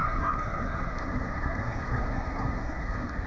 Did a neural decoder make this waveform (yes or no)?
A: yes